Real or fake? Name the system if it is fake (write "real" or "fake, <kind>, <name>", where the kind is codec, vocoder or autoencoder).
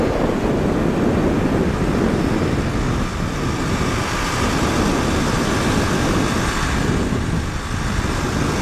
real